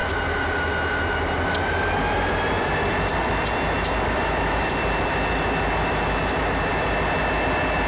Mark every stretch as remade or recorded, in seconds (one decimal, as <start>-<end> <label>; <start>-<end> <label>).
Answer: 0.0-0.7 remade; 0.7-2.6 recorded; 2.6-5.1 remade; 5.1-7.9 recorded